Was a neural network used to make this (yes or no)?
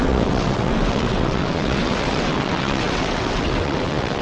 yes